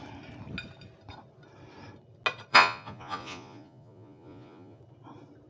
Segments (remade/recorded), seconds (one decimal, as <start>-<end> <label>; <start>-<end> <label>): 0.0-2.5 recorded; 2.5-4.8 remade; 4.8-5.5 recorded